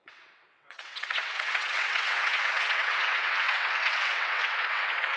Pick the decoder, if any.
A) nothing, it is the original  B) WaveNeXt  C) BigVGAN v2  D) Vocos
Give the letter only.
B